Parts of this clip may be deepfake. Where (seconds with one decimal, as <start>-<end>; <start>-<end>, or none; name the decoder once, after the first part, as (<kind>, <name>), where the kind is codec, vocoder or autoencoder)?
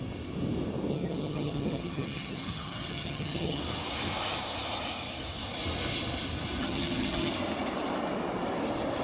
0.9-3.6 (vocoder, HiFi-GAN); 6.6-7.3